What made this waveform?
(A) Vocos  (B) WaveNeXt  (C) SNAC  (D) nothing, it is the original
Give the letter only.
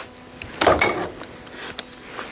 D